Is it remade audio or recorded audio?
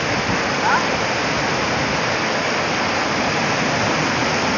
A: recorded